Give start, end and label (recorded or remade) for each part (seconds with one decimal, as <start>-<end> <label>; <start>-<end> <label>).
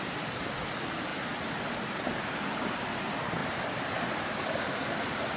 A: 0.0-5.4 recorded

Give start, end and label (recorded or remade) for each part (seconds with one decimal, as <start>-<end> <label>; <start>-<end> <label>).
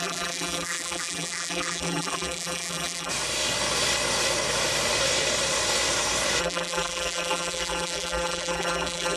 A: 0.0-3.1 remade; 3.1-6.4 recorded; 6.4-9.2 remade